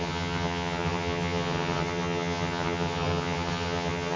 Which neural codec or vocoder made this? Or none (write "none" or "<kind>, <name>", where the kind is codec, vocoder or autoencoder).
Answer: vocoder, HiFi-GAN